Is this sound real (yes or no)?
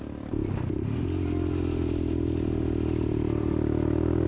yes